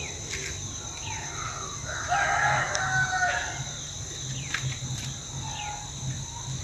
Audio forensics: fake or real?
real